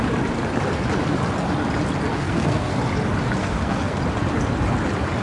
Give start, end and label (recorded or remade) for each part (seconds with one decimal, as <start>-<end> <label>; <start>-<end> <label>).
0.0-2.1 recorded; 2.1-2.8 remade; 2.8-3.4 recorded; 3.4-4.0 remade; 4.0-5.2 recorded